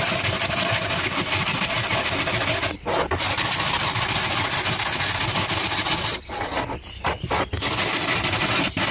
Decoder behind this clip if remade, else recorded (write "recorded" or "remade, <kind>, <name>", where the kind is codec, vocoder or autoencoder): recorded